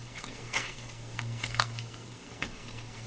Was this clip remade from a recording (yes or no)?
yes